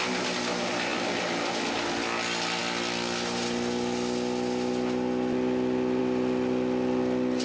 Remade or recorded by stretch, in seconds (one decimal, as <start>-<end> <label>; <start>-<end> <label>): 0.0-7.4 recorded